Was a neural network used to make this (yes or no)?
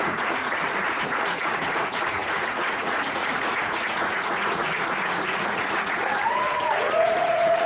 yes